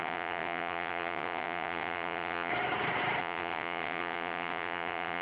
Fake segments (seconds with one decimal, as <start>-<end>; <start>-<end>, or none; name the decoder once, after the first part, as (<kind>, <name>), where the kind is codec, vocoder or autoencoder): 0.0-2.5 (vocoder, WaveNeXt); 3.2-5.2